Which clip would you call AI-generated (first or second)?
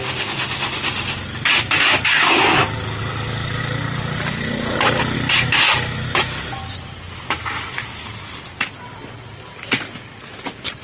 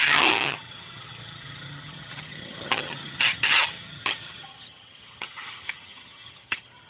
second